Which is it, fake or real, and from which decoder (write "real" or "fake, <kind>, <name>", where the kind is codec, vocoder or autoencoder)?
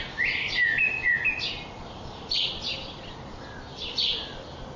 real